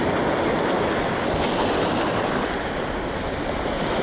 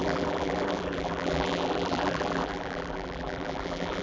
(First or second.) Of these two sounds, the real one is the first